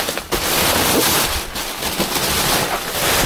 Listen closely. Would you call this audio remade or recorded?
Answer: recorded